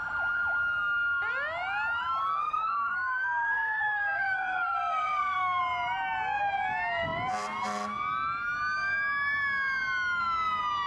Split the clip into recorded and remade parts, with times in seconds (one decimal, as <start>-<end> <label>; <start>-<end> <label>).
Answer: 0.0-2.2 recorded; 2.2-5.6 remade; 5.6-10.9 recorded